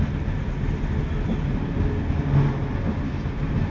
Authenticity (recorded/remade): recorded